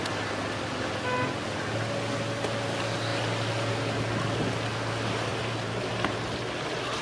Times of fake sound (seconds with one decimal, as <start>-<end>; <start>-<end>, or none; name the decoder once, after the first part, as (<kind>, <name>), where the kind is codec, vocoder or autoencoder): 5.3-6.6 (vocoder, BigVGAN v2)

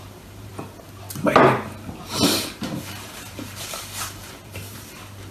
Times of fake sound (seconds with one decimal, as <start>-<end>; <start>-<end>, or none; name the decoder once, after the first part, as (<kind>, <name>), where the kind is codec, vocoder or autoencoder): 0.0-0.5 (vocoder, BigVGAN v2); 2.1-5.3

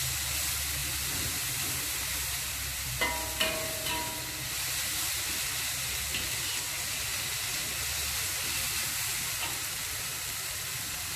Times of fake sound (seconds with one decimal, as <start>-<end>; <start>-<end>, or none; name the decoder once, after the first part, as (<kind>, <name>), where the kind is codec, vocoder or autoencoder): 0.8-3.9 (vocoder, BigVGAN v2); 10.1-11.2

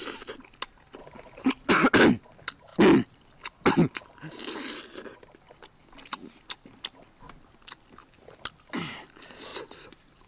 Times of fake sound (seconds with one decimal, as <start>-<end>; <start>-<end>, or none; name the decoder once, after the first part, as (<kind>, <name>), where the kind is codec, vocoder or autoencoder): 1.0-1.7 (vocoder, BigVGAN v2); 9.5-10.3

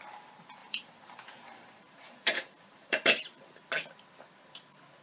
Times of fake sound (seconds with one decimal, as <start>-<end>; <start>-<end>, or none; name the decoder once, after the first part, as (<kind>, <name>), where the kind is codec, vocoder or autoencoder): 0.6-3.6 (vocoder, BigVGAN v2)

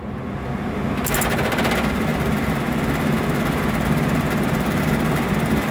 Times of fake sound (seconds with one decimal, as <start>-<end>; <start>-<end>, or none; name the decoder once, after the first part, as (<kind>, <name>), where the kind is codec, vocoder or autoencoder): none